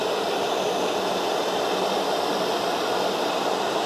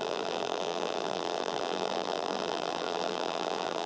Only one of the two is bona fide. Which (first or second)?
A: first